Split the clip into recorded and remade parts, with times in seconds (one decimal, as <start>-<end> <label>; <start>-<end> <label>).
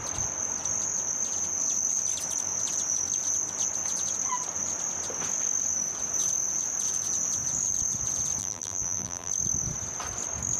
0.0-8.4 recorded; 8.4-9.3 remade; 9.3-10.6 recorded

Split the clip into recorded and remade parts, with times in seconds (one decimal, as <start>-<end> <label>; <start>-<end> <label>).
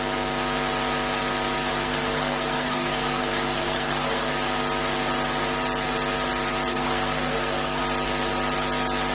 0.0-1.7 recorded; 1.7-4.3 remade; 4.3-6.7 recorded; 6.7-7.8 remade; 7.8-9.1 recorded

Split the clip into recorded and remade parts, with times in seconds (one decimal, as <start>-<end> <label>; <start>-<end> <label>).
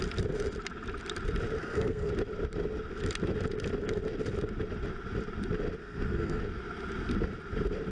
0.0-1.6 recorded; 1.6-2.1 remade; 2.1-5.8 recorded; 5.8-6.4 remade; 6.4-7.9 recorded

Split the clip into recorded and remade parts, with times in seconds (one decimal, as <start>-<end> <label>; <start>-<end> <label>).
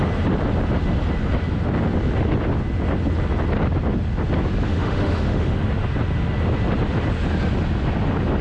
0.0-4.7 recorded; 4.7-5.7 remade; 5.7-8.4 recorded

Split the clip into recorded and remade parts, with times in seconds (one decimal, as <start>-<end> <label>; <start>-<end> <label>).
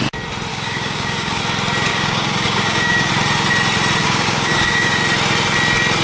0.0-0.5 recorded; 0.5-1.4 remade; 1.4-1.9 recorded; 1.9-3.1 remade; 3.1-4.0 recorded; 4.0-5.0 remade; 5.0-6.0 recorded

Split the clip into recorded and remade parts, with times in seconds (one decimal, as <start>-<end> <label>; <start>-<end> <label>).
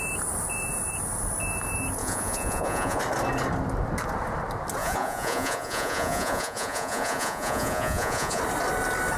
0.0-2.0 recorded; 2.0-3.0 remade; 3.0-4.8 recorded; 4.8-8.4 remade; 8.4-9.2 recorded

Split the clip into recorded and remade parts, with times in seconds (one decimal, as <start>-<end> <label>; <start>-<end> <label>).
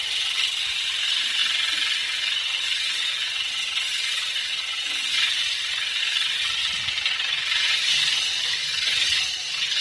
0.0-6.6 recorded; 6.6-8.6 remade; 8.6-9.8 recorded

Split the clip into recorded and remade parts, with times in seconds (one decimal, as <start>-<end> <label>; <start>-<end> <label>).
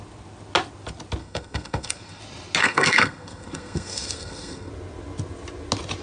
0.0-1.2 recorded; 1.2-2.2 remade; 2.2-2.6 recorded; 2.6-4.7 remade; 4.7-6.0 recorded